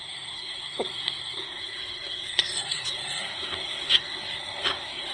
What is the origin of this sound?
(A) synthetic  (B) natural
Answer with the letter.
A